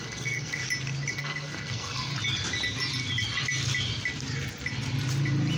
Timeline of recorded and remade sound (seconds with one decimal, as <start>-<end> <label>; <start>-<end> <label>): 0.0-0.6 remade; 0.6-1.1 recorded; 1.1-2.1 remade; 2.1-5.6 recorded